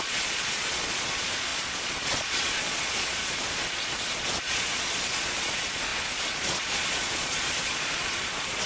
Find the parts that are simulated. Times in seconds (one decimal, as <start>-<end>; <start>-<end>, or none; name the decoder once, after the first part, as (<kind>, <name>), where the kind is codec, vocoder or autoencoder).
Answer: 0.0-8.7 (vocoder, Vocos)